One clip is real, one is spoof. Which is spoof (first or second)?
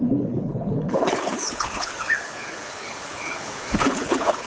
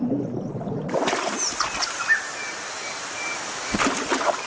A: first